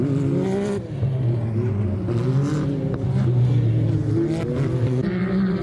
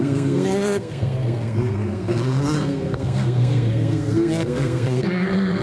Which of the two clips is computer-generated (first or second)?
second